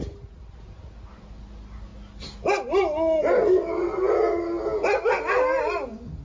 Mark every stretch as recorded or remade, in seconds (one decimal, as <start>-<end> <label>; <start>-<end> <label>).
0.0-6.2 recorded